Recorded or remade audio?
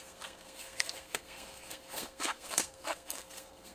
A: remade